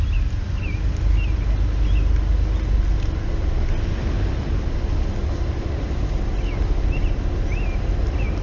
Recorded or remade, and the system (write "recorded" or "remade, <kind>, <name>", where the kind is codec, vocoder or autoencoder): recorded